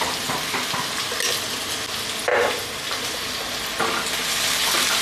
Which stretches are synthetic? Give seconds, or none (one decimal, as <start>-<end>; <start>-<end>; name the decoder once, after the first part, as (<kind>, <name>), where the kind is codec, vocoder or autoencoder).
2.3-3.0 (vocoder, BigVGAN v2)